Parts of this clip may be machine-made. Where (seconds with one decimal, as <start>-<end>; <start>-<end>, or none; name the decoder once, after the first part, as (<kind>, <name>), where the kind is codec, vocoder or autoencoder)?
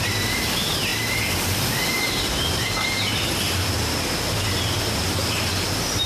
0.0-6.1 (vocoder, BigVGAN v2)